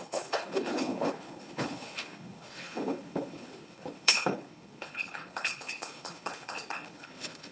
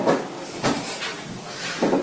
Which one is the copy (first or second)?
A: first